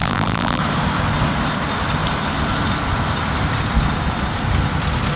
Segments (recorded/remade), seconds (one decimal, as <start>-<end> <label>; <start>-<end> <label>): 0.0-0.6 remade; 0.6-5.2 recorded